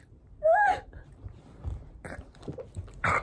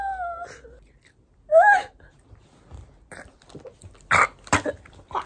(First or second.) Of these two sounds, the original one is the second